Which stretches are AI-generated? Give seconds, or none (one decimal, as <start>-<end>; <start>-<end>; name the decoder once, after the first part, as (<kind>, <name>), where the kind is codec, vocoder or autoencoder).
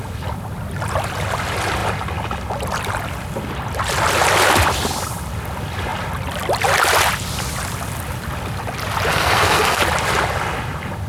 9.1-9.8 (codec, SNAC)